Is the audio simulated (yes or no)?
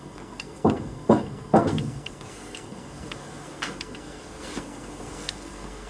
yes